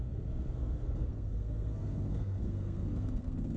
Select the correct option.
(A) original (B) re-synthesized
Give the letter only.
B